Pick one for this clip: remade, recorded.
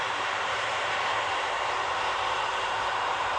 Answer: remade